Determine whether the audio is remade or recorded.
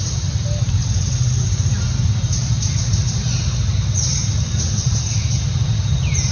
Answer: recorded